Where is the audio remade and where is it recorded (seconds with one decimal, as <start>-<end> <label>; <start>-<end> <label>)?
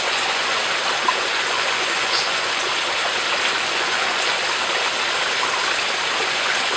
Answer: 0.0-0.6 remade; 0.6-1.2 recorded; 1.2-2.7 remade; 2.7-3.5 recorded; 3.5-4.4 remade; 4.4-6.2 recorded; 6.2-6.8 remade